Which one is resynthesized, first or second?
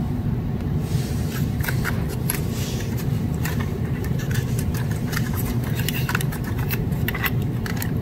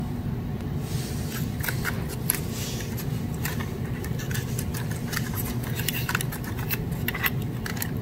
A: first